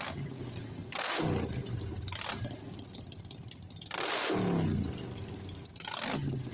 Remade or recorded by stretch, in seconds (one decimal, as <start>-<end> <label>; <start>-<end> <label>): 0.0-6.5 recorded